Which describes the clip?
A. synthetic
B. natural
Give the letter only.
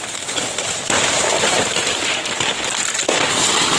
B